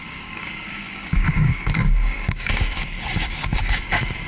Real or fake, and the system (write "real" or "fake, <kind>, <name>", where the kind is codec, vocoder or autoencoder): fake, codec, DAC